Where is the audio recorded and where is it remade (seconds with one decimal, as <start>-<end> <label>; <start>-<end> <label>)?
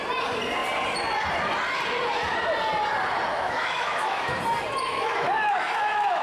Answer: 0.0-3.3 recorded; 3.3-4.4 remade; 4.4-4.9 recorded; 4.9-6.2 remade